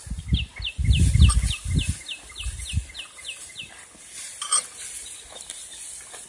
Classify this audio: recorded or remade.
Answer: recorded